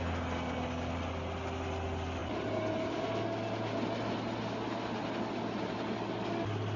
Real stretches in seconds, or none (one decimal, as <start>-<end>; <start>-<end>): 0.0-6.8